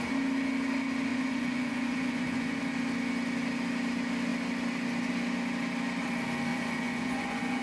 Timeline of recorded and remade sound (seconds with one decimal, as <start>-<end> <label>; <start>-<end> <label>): 0.0-1.1 recorded; 1.1-2.6 remade; 2.6-6.5 recorded; 6.5-7.6 remade